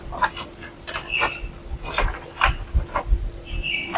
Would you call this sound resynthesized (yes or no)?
no